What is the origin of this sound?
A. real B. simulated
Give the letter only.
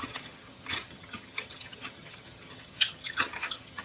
B